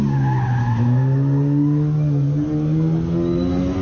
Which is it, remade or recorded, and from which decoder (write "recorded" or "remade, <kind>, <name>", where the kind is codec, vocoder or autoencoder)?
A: recorded